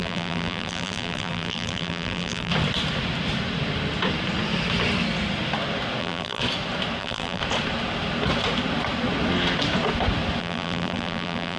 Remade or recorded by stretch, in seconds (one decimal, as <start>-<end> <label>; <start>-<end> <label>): 0.0-2.5 remade; 2.5-6.0 recorded; 6.0-6.4 remade; 6.4-7.0 recorded; 7.0-7.4 remade; 7.4-10.4 recorded; 10.4-11.6 remade